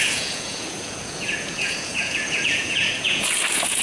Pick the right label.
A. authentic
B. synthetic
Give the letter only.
B